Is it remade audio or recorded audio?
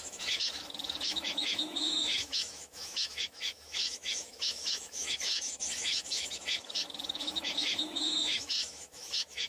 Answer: remade